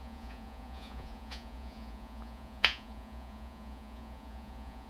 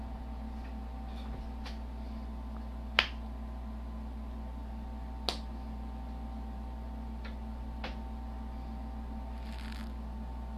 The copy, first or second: first